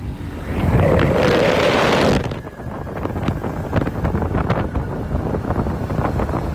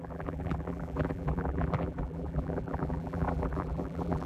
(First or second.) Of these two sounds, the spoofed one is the second